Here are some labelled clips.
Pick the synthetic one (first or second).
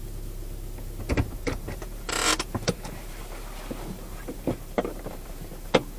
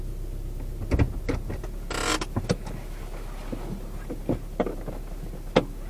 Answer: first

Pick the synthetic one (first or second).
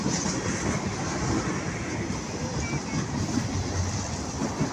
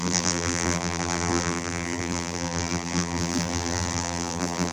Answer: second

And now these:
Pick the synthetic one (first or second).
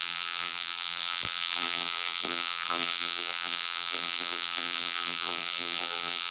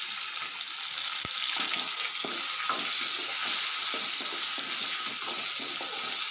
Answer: first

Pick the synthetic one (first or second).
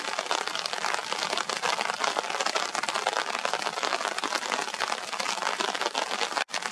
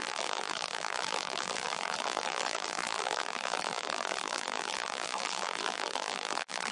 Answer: second